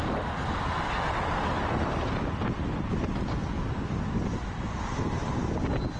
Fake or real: real